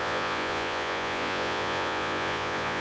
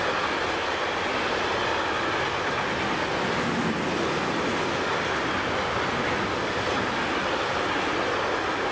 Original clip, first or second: second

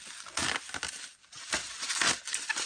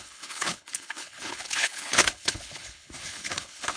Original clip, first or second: first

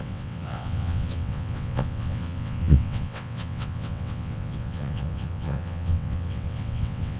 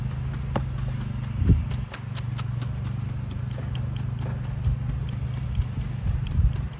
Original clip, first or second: second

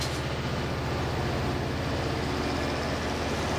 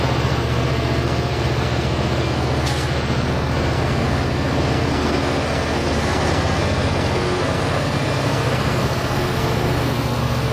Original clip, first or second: first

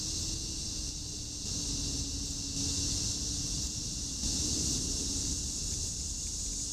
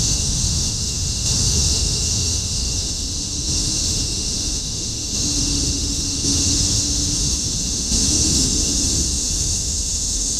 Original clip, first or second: first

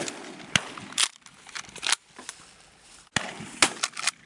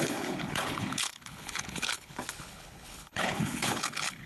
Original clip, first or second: first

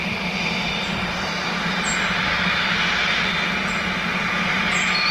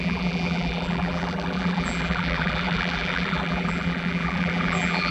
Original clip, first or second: first